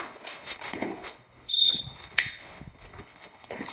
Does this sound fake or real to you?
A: fake